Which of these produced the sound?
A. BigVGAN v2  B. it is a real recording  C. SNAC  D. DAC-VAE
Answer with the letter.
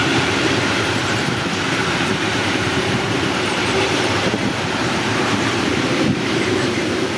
A